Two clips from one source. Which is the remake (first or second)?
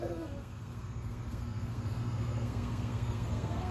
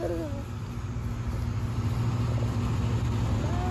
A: first